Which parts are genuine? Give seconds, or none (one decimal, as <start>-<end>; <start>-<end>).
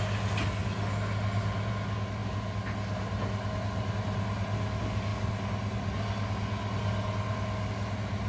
0.0-8.3